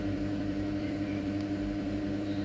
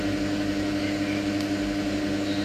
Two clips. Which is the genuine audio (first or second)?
second